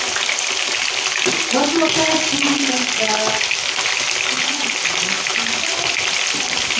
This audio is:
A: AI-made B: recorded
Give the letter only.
B